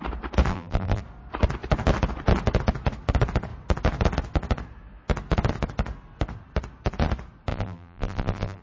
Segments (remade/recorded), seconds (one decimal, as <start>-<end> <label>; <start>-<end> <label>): 0.0-0.5 recorded; 0.5-1.0 remade; 1.0-7.5 recorded; 7.5-8.6 remade